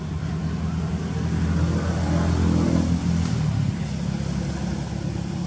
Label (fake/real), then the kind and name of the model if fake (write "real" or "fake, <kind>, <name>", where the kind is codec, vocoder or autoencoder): real